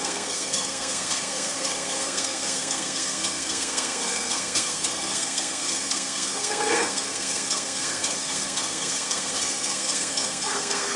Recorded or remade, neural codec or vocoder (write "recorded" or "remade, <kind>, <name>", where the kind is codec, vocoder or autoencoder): remade, codec, SNAC